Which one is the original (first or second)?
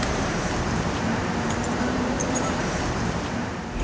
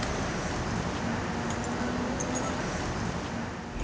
second